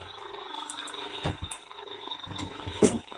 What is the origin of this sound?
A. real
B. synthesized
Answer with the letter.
B